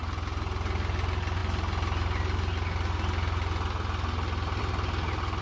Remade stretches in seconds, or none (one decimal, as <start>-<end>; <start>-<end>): none